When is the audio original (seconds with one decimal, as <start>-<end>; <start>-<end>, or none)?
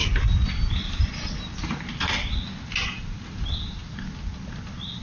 0.0-5.0